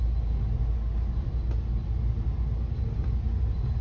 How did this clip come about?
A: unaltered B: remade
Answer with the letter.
A